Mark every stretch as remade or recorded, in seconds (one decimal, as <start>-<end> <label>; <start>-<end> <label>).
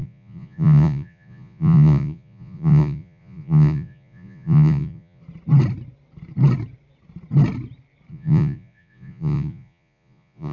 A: 0.0-5.2 remade; 5.2-8.1 recorded; 8.1-10.5 remade